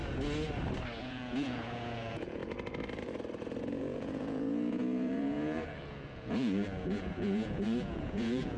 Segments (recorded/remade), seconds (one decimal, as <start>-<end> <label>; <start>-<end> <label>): 0.0-1.0 recorded; 1.0-2.4 remade; 2.4-3.6 recorded; 3.6-8.6 remade